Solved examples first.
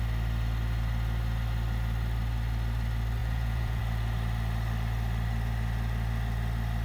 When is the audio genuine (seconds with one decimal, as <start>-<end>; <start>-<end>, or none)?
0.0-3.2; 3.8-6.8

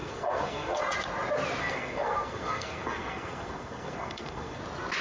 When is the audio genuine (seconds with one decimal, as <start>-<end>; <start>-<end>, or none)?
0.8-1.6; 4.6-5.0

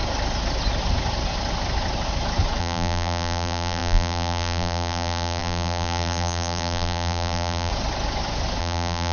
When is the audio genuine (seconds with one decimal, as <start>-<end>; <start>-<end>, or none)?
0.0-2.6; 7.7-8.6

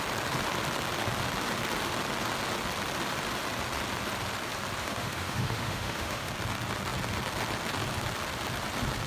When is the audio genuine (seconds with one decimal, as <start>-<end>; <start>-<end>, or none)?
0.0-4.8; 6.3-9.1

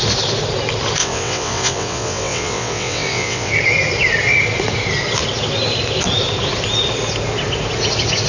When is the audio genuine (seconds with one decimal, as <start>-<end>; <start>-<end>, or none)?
0.0-1.0; 3.5-8.3

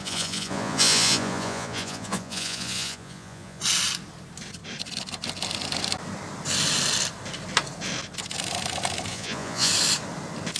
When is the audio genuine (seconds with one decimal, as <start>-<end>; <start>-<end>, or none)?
3.6-9.1; 9.7-10.6

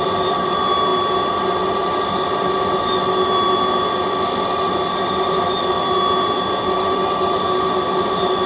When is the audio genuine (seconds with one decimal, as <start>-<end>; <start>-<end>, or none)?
0.0-8.5

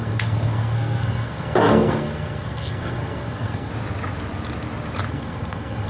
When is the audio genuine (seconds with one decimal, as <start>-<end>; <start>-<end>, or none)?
3.7-5.1